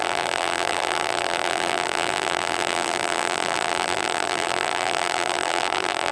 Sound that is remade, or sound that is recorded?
remade